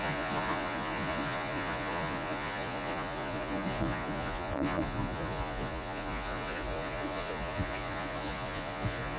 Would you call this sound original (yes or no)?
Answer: no